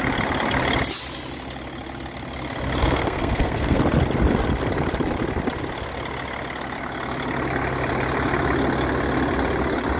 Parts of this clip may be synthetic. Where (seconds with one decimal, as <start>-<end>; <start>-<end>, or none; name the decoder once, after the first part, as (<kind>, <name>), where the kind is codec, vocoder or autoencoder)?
2.8-3.8 (codec, SNAC)